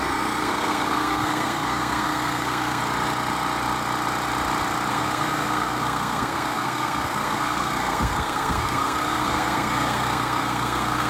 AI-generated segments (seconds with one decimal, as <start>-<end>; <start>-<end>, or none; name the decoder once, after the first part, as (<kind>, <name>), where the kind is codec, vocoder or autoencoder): 0.0-2.8 (codec, SNAC); 4.9-11.1